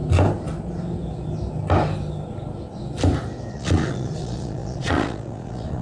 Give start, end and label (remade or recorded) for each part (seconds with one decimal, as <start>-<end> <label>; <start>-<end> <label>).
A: 0.0-3.5 recorded; 3.5-5.8 remade